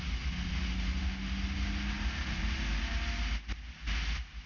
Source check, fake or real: real